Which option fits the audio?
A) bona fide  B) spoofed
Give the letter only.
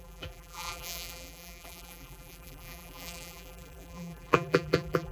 B